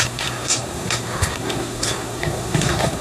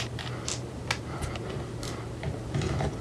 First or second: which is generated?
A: first